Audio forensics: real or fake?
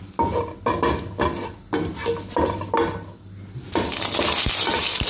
real